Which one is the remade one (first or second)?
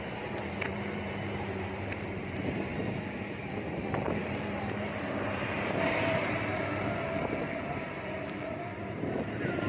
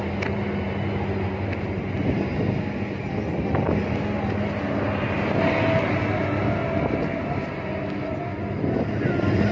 first